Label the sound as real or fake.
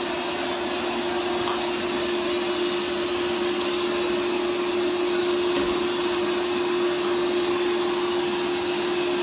real